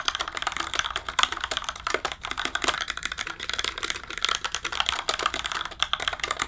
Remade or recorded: recorded